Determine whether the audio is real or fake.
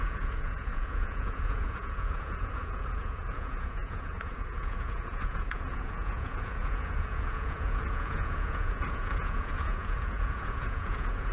fake